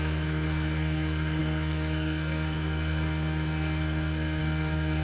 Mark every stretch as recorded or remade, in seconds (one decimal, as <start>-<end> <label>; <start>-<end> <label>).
0.0-5.0 remade